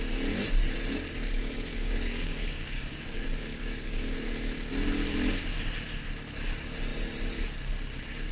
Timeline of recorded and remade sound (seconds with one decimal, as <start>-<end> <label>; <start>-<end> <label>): 0.0-1.7 recorded; 1.7-4.3 remade; 4.3-8.3 recorded